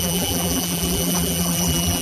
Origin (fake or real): fake